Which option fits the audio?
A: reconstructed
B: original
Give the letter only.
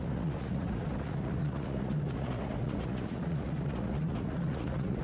A